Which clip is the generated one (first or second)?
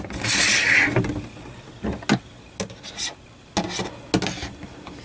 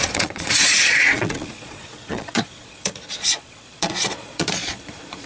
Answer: second